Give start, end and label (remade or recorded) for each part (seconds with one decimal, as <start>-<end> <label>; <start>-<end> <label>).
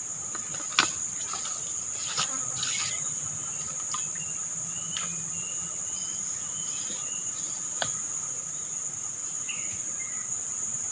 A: 0.0-6.1 recorded; 6.1-9.9 remade; 9.9-10.9 recorded